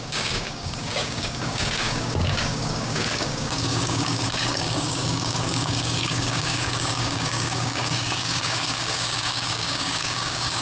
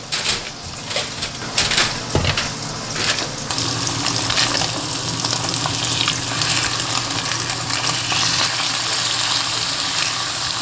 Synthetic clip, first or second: first